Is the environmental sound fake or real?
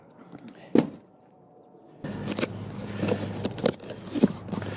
real